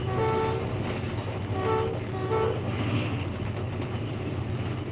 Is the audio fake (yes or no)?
no